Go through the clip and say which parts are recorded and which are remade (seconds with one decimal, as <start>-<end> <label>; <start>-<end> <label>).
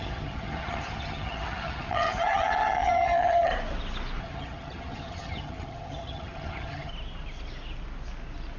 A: 0.0-3.5 remade; 3.5-4.2 recorded; 4.2-6.9 remade; 6.9-8.6 recorded